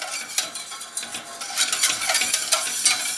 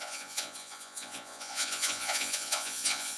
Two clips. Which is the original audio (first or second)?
first